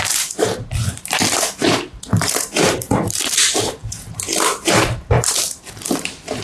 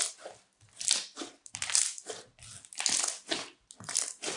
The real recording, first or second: second